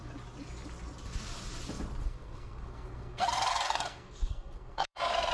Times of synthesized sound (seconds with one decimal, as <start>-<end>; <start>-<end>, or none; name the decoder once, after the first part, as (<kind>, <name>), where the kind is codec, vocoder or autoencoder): 2.0-5.3 (codec, SNAC)